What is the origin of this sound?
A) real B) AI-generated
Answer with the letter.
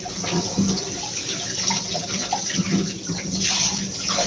A